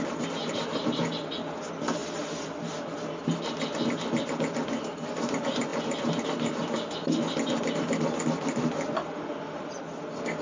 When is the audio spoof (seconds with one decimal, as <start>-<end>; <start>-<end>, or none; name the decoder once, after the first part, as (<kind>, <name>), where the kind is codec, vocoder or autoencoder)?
none